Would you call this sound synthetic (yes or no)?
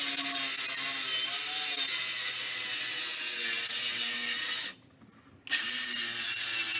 no